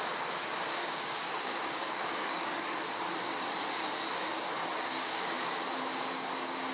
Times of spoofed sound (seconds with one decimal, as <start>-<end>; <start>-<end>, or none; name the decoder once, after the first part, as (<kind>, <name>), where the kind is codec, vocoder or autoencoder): 0.7-2.5 (codec, DAC); 4.7-5.5